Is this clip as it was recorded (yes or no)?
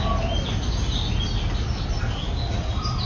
yes